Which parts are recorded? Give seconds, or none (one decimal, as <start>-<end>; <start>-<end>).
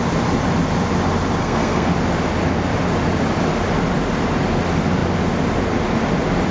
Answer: 0.0-1.4; 1.9-6.5